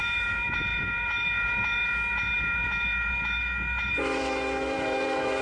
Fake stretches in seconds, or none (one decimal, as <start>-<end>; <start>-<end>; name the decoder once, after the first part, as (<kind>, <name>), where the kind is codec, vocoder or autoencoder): 0.0-5.4 (autoencoder, DAC-VAE)